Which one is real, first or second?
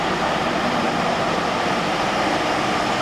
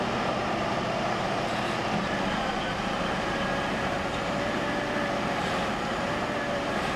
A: first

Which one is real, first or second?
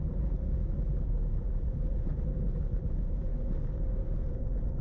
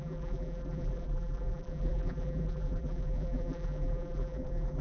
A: first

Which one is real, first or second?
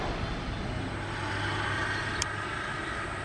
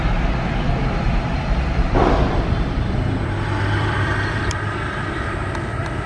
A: first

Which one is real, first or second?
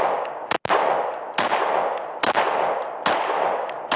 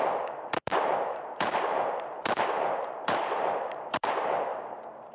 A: first